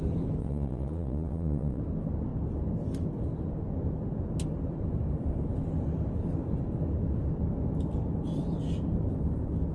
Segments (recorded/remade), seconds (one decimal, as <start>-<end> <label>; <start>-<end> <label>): 0.0-0.4 recorded; 0.4-1.8 remade; 1.8-9.7 recorded